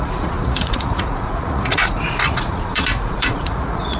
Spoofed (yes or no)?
yes